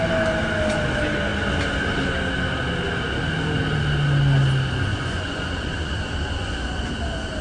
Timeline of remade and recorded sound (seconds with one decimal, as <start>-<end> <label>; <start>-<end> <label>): 0.0-4.9 recorded; 4.9-5.9 remade; 5.9-6.4 recorded; 6.4-6.9 remade; 6.9-7.4 recorded